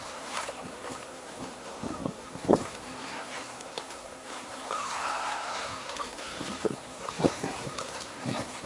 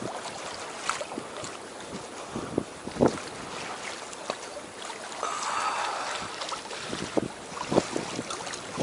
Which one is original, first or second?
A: second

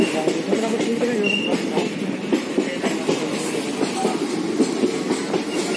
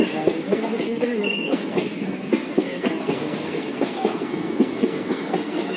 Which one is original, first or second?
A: first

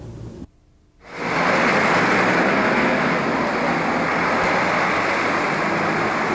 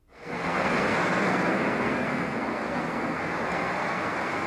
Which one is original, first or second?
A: first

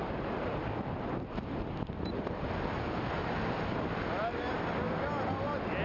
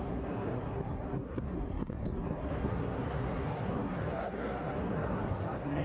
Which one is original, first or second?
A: first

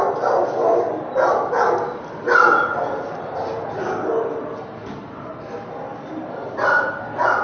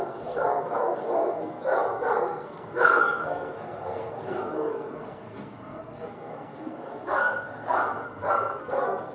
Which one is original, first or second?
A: first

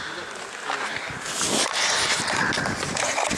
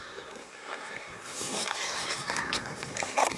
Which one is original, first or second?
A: first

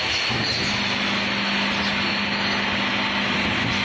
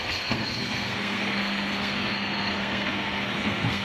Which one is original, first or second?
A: first